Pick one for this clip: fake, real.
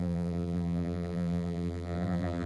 fake